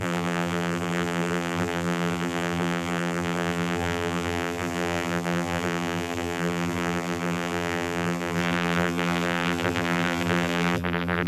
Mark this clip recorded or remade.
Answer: remade